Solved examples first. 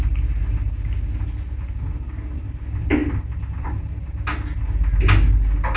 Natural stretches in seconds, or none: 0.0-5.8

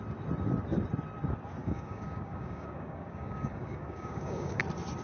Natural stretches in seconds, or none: 0.0-1.6; 4.6-5.0

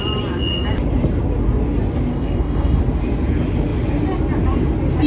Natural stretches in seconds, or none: 0.0-2.1; 2.8-5.1